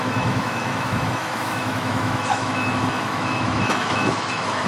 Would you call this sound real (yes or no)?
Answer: no